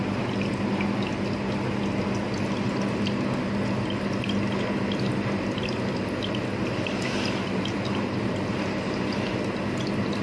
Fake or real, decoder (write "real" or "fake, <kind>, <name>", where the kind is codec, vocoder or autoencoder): real